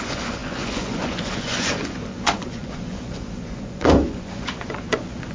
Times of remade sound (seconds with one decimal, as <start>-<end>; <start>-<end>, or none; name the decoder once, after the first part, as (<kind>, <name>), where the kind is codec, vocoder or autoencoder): 0.0-5.3 (vocoder, Vocos)